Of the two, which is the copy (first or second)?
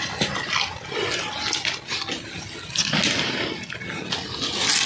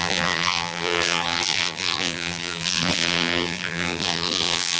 second